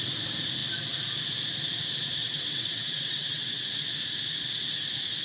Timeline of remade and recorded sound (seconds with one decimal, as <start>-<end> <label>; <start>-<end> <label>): 0.0-2.2 recorded; 2.2-3.7 remade; 3.7-5.2 recorded